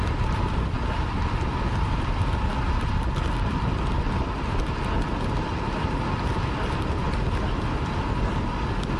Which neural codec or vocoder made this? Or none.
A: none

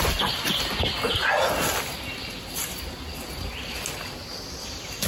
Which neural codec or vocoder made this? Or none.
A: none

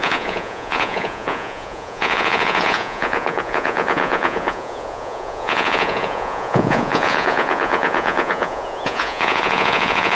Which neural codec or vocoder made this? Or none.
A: vocoder, Vocos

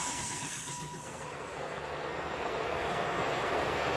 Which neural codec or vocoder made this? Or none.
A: codec, SNAC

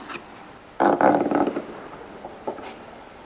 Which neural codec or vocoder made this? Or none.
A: none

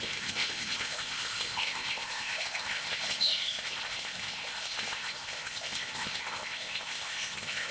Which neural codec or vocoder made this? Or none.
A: codec, ZipCodec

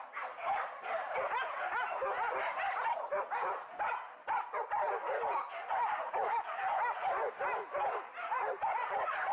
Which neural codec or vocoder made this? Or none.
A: none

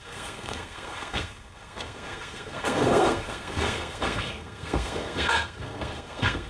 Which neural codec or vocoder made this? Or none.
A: codec, SNAC